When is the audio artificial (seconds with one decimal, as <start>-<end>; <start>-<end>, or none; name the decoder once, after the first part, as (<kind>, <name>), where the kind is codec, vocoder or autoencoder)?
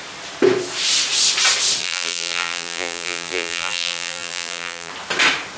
1.8-4.9 (vocoder, BigVGAN v2)